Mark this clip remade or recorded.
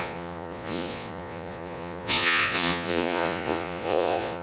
remade